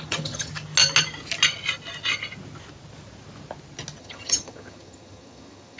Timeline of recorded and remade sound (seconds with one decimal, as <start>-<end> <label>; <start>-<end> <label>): 0.0-0.5 remade; 0.5-4.0 recorded; 4.0-5.8 remade